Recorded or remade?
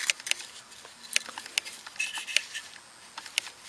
recorded